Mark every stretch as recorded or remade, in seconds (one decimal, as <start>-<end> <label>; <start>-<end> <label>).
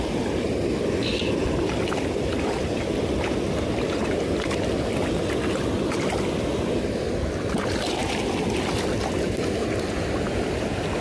0.0-11.0 recorded